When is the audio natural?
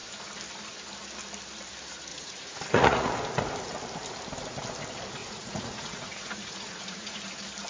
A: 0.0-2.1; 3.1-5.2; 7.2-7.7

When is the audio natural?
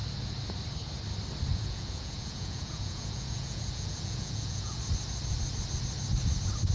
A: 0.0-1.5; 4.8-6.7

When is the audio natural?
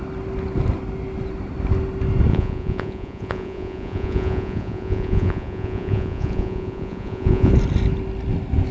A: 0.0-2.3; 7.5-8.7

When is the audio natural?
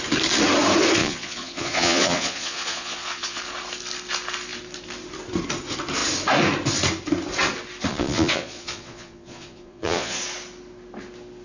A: 0.0-1.0; 3.4-7.9; 10.2-11.4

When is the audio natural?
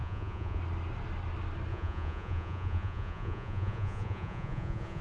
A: 0.6-1.7